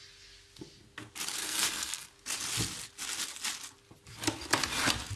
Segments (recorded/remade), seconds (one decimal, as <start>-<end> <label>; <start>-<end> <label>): 0.0-1.4 recorded; 1.4-2.1 remade; 2.1-5.2 recorded